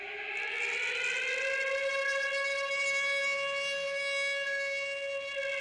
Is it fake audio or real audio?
real